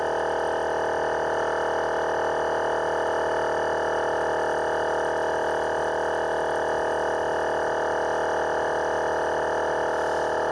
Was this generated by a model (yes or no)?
no